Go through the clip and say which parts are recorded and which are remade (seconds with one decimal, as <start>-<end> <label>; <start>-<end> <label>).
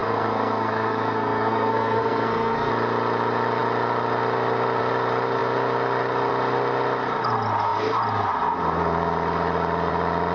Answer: 0.0-2.7 remade; 2.7-10.3 recorded